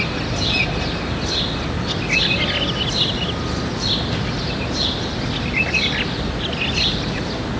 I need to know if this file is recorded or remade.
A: recorded